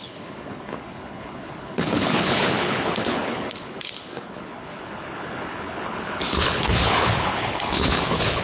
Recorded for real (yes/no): no